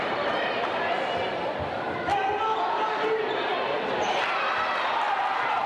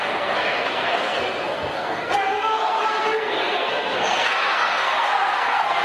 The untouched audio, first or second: first